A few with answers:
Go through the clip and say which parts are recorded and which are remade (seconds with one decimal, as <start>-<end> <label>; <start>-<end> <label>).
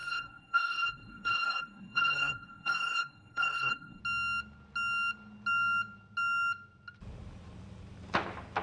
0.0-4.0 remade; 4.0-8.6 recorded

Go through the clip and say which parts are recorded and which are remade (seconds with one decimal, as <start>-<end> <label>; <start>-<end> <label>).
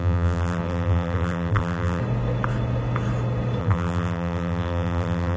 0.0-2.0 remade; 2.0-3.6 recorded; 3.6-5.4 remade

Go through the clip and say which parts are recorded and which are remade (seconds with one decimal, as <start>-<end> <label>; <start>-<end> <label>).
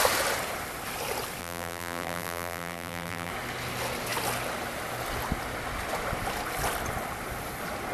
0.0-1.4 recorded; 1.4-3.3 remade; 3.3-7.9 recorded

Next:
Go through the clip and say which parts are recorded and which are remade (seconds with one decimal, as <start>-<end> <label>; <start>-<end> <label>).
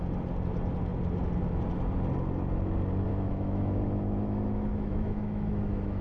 0.0-3.1 recorded; 3.1-6.0 remade